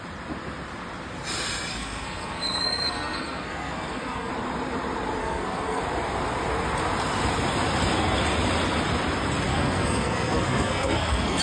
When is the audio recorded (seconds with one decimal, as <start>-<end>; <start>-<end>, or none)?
0.0-1.7; 4.3-5.2; 5.8-9.5